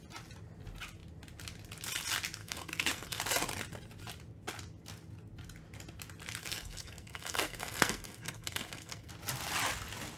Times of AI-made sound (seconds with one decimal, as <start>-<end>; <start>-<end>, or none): 2.4-3.2; 6.4-9.1